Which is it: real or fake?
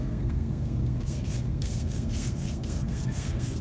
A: fake